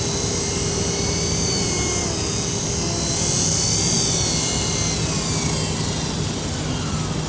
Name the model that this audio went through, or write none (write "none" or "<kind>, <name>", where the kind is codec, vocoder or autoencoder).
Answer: none